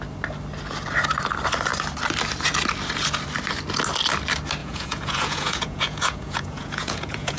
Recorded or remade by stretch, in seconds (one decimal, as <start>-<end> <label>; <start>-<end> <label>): 0.0-4.6 recorded; 4.6-7.4 remade